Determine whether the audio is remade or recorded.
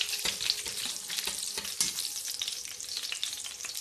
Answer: recorded